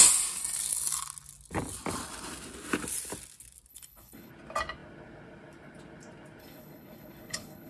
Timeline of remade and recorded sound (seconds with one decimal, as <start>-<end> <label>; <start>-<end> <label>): 0.0-3.7 recorded; 3.7-4.3 remade; 4.3-6.4 recorded; 6.4-7.7 remade